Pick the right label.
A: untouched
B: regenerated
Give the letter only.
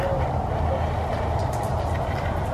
A